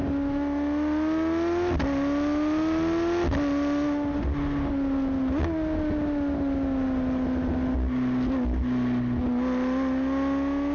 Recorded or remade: recorded